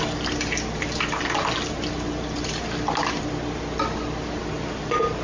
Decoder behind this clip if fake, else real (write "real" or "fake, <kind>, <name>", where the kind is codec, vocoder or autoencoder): real